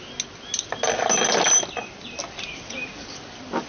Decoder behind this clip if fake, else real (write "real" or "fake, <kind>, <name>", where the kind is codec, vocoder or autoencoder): real